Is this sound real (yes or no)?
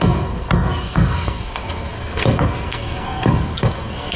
no